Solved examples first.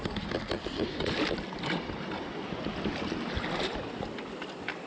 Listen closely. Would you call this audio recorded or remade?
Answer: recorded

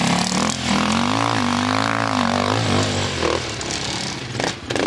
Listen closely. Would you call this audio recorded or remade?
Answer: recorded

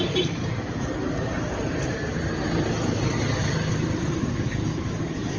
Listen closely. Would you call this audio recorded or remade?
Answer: recorded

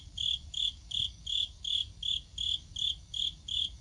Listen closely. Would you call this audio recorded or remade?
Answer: remade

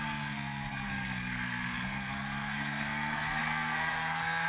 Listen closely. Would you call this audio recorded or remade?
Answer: remade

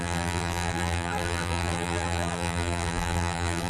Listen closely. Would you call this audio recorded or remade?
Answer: remade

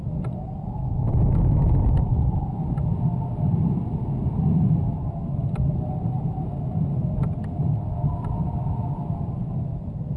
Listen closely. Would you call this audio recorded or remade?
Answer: recorded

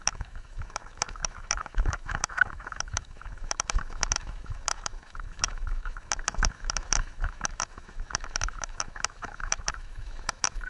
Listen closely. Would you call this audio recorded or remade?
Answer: remade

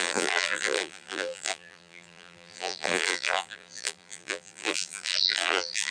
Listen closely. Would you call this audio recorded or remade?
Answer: remade